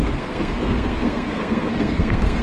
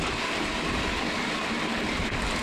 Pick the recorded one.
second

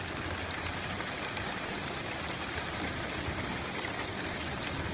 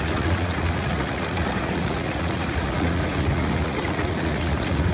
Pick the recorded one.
first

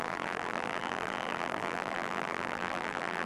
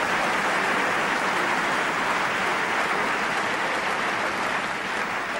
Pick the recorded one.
second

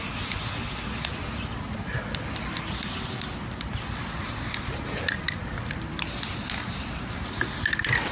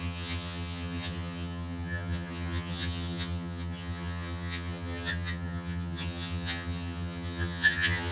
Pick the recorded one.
first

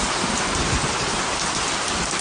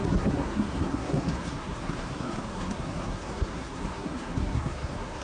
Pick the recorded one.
first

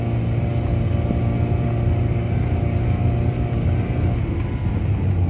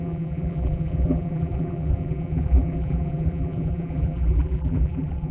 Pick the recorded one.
first